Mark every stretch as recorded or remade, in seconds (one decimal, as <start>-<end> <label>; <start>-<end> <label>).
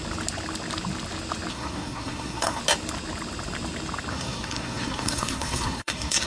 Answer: 0.0-1.5 recorded; 1.5-2.6 remade; 2.6-4.1 recorded; 4.1-6.3 remade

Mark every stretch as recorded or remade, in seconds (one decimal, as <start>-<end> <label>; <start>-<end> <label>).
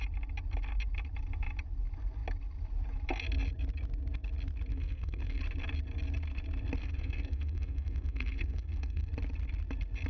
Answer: 0.0-4.7 recorded; 4.7-5.4 remade; 5.4-6.8 recorded; 6.8-9.1 remade; 9.1-10.1 recorded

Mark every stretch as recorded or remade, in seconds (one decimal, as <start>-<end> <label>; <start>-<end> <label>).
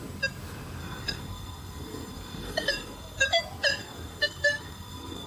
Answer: 0.0-0.8 recorded; 0.8-3.4 remade; 3.4-3.8 recorded; 3.8-5.3 remade